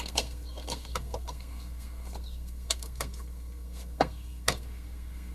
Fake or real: fake